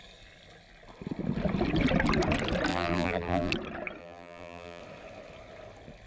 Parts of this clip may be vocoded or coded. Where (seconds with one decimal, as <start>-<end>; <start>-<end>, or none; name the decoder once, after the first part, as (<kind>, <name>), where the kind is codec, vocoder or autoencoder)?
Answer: 2.7-3.5 (vocoder, BigVGAN v2); 4.0-4.8

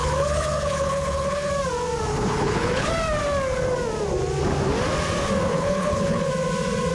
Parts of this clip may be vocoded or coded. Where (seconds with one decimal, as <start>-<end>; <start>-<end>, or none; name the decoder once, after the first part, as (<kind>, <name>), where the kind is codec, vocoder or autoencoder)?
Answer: 0.0-1.5 (codec, HILCodec); 2.1-2.9; 5.5-6.3

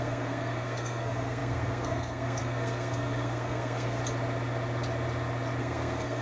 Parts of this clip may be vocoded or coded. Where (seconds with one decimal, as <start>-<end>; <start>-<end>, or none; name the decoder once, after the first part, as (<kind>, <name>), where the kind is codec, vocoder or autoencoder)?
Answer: 0.0-4.0 (codec, SNAC); 5.6-6.2

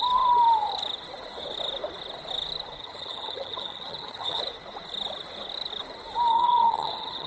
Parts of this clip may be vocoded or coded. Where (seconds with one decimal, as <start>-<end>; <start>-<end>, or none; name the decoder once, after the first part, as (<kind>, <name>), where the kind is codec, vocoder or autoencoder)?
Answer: 2.8-4.4 (vocoder, HiFi-GAN); 6.3-7.3

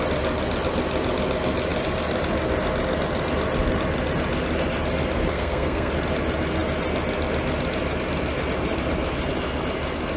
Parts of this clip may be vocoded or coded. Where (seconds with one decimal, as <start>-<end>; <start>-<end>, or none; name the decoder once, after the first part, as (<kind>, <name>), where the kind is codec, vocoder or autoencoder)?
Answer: 5.3-5.9 (codec, SNAC)

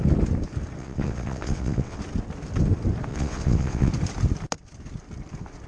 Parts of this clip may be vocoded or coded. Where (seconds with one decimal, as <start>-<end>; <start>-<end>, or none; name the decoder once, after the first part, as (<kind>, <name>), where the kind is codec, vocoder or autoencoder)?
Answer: 0.8-2.0 (vocoder, WaveNeXt); 3.1-3.9

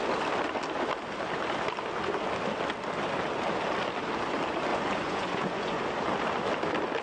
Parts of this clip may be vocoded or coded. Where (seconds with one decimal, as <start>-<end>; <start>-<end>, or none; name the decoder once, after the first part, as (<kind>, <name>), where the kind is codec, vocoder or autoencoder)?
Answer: 4.7-5.8 (vocoder, Vocos)

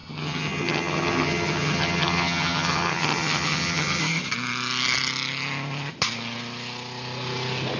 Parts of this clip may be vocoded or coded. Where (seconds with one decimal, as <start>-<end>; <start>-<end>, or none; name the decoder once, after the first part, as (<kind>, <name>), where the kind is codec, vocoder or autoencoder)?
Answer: 0.0-4.0 (vocoder, HiFi-GAN)